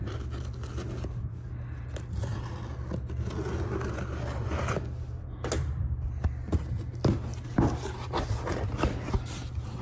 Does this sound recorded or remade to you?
recorded